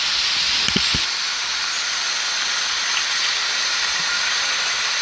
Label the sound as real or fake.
real